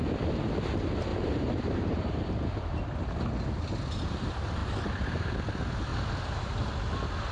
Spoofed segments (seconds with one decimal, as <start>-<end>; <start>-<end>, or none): 1.1-2.1; 4.6-5.3; 5.9-6.7